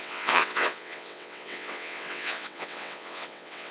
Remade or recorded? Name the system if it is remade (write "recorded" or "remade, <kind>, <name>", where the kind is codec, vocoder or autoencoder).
remade, vocoder, WaveNeXt